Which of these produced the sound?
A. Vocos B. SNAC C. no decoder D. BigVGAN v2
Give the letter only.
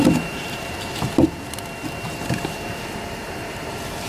D